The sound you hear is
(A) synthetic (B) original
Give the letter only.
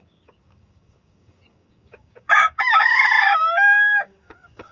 A